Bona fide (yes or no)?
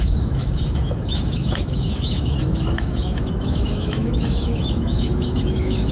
no